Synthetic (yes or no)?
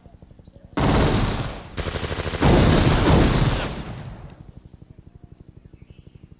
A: no